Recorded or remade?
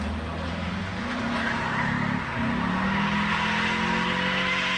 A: recorded